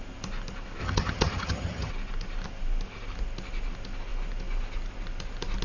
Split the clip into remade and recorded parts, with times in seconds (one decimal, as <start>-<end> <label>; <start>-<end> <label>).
0.0-0.8 recorded; 0.8-1.9 remade; 1.9-5.6 recorded